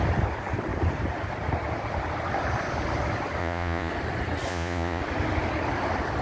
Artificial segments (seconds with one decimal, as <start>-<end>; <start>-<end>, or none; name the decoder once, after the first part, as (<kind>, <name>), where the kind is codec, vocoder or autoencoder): 3.4-3.9 (vocoder, Vocos); 4.5-5.0